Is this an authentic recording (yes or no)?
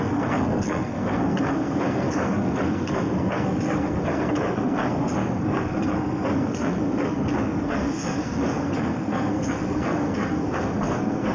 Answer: no